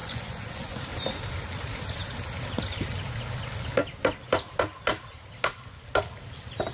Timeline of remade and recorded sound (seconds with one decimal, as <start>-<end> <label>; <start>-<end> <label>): 0.0-0.8 remade; 0.8-6.7 recorded

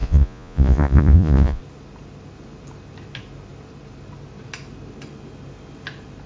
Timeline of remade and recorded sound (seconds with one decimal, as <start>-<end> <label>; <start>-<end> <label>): 0.0-1.6 remade; 1.6-6.3 recorded

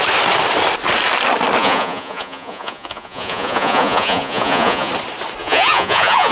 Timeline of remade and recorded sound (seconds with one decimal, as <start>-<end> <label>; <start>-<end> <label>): 0.0-1.6 recorded; 1.6-4.9 remade; 4.9-5.4 recorded; 5.4-6.3 remade

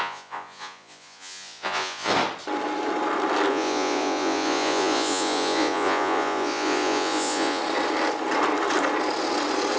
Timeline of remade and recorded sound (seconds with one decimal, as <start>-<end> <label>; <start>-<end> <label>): 0.0-2.1 remade; 2.1-3.5 recorded; 3.5-7.6 remade; 7.6-9.8 recorded

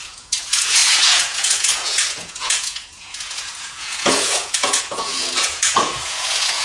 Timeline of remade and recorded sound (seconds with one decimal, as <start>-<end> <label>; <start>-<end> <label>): 0.0-6.6 remade

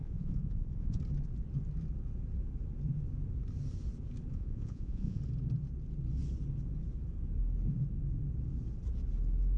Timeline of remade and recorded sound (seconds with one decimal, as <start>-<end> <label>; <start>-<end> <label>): 0.0-1.0 remade; 1.0-4.3 recorded; 4.3-5.2 remade; 5.2-9.6 recorded

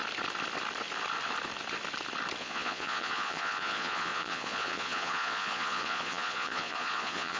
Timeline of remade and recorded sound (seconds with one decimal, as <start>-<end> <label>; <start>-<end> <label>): 0.0-2.4 recorded; 2.4-7.4 remade

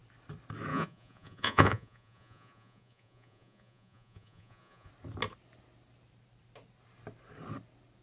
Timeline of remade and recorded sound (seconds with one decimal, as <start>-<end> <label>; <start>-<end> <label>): 0.0-0.7 recorded; 0.7-4.9 remade; 4.9-8.0 recorded